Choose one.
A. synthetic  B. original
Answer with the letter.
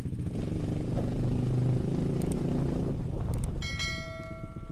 B